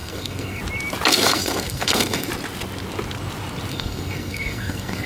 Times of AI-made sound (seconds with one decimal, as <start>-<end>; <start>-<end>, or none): 0.0-0.6; 1.1-2.3; 3.7-5.1